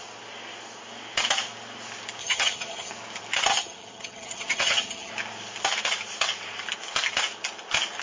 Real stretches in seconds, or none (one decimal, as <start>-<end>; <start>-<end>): 0.0-2.2; 2.9-3.5; 5.1-8.0